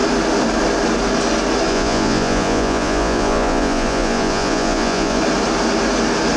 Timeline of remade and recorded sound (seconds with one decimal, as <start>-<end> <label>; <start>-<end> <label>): 0.0-1.7 recorded; 1.7-5.2 remade; 5.2-6.4 recorded